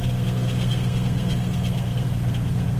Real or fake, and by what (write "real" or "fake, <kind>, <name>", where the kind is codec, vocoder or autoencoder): fake, codec, SNAC